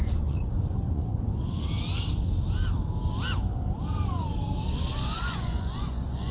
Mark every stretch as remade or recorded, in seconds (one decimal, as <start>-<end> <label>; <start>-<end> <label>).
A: 0.0-1.1 remade; 1.1-4.9 recorded; 4.9-6.3 remade

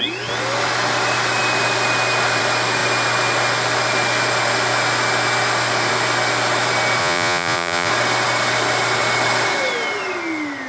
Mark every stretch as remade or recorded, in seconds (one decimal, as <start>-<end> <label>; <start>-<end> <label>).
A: 0.0-7.0 recorded; 7.0-7.9 remade; 7.9-10.7 recorded

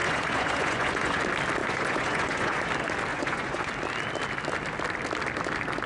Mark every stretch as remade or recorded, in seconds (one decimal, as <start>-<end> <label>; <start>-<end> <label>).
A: 0.0-1.2 remade; 1.2-1.6 recorded; 1.6-2.7 remade; 2.7-3.1 recorded; 3.1-3.7 remade; 3.7-5.9 recorded